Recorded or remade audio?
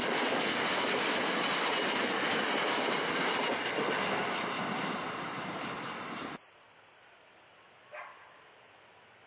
recorded